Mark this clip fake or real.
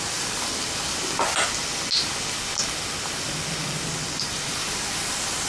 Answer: real